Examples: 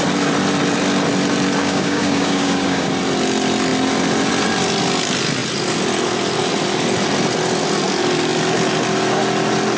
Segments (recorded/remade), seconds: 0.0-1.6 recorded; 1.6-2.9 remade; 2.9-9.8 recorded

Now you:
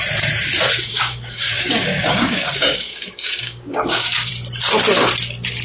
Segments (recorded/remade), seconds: 0.0-0.9 recorded; 0.9-4.3 remade; 4.3-5.6 recorded

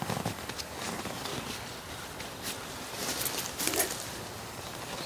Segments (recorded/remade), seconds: 0.0-1.3 remade; 1.3-4.4 recorded; 4.4-5.1 remade

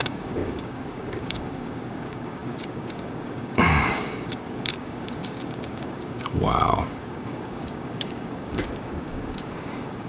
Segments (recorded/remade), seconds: 0.0-10.1 remade

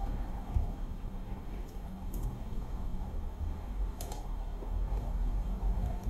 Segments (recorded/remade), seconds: 0.0-6.1 remade

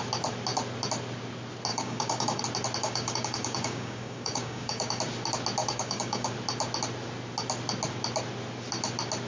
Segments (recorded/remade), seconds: 0.0-1.7 recorded; 1.7-2.4 remade; 2.4-2.8 recorded; 2.8-5.0 remade; 5.0-5.6 recorded; 5.6-6.3 remade; 6.3-9.3 recorded